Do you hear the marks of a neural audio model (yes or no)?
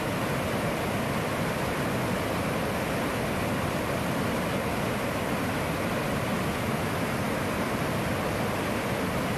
no